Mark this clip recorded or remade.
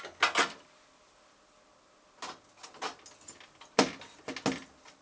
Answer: recorded